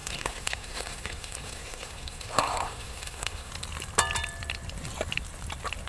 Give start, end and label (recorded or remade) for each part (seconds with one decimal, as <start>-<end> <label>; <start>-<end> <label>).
0.0-3.5 remade; 3.5-5.9 recorded